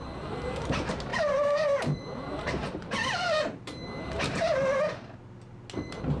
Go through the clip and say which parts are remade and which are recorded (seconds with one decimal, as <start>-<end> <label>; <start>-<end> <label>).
0.0-1.1 recorded; 1.1-4.8 remade; 4.8-6.2 recorded